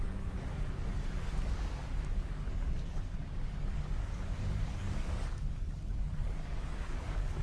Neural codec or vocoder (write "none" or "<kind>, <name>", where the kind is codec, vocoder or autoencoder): codec, DAC